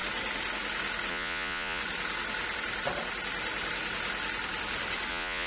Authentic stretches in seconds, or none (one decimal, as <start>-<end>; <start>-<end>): 0.0-1.1; 1.8-5.1